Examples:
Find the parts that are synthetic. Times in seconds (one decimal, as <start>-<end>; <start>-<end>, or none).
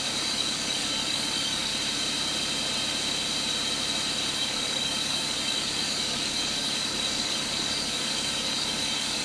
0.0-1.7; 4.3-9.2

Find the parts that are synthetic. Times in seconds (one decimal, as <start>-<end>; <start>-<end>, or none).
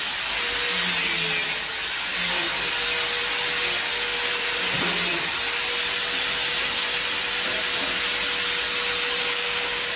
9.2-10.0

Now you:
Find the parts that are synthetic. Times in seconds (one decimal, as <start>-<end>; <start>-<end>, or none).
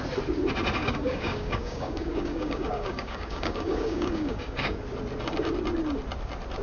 0.8-4.8